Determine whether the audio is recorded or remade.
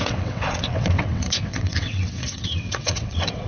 remade